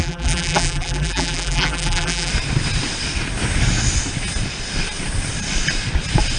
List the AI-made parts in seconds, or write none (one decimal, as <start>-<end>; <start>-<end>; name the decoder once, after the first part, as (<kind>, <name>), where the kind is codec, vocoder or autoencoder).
0.0-2.3 (vocoder, BigVGAN v2)